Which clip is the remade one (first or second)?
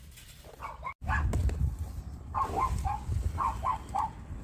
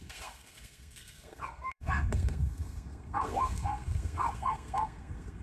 second